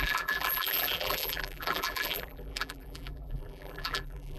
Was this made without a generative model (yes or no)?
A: no